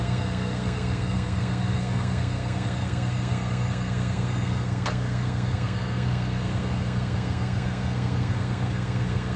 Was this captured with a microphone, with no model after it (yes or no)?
no